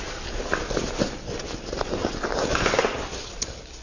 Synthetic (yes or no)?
no